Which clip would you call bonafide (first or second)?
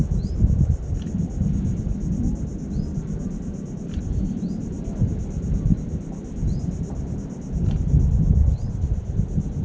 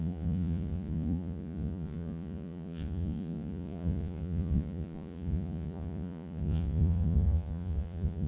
first